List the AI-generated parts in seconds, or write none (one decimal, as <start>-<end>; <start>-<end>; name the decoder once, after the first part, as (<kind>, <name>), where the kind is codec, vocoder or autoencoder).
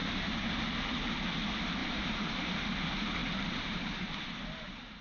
0.0-0.5 (vocoder, BigVGAN v2); 1.8-2.6; 3.2-5.0